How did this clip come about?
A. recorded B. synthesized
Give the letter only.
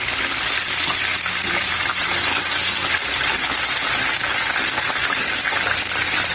B